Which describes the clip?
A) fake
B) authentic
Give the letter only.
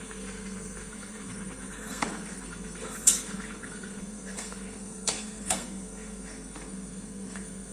A